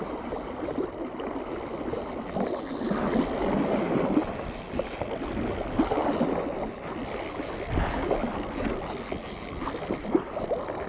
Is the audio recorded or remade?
recorded